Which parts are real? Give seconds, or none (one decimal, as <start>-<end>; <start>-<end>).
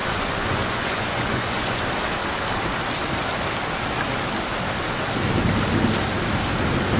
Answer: 1.8-7.0